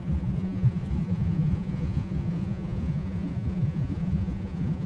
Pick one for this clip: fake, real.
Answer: fake